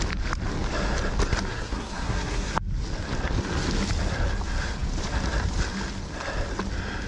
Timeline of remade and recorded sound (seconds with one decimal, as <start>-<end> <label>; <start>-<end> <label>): 0.0-1.5 recorded; 1.5-2.5 remade; 2.5-7.1 recorded